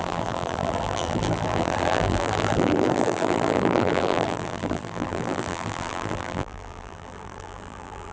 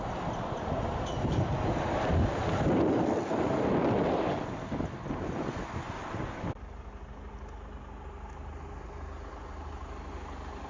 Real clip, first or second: second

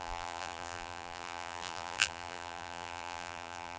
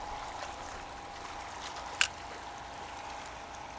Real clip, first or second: second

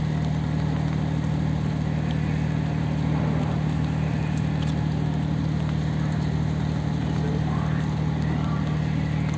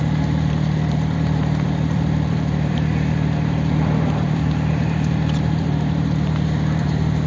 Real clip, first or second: first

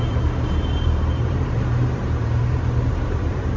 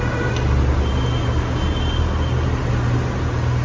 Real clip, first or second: second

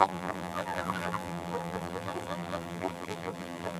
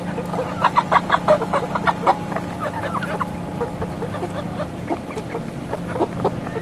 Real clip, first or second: second